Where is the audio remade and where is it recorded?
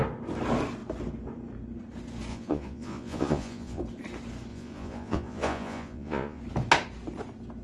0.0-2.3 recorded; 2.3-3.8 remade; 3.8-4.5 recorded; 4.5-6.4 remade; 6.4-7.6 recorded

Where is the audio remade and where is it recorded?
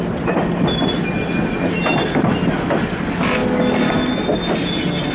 0.0-5.1 recorded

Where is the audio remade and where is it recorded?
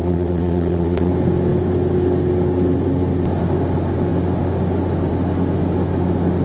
0.0-1.1 remade; 1.1-6.4 recorded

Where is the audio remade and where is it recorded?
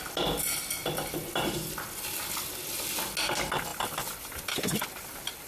0.0-5.5 recorded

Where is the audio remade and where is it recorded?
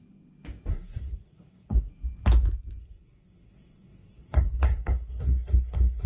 0.0-0.7 recorded; 0.7-1.9 remade; 1.9-2.8 recorded; 2.8-6.1 remade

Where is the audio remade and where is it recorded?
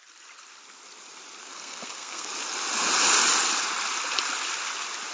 0.0-1.4 recorded; 1.4-2.3 remade; 2.3-5.1 recorded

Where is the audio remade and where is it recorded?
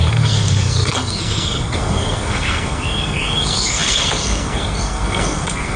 0.0-5.8 remade